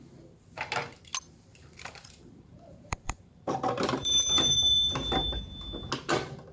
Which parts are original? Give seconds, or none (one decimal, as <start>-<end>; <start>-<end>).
0.0-1.5; 5.4-6.5